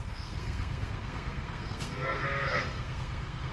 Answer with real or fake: fake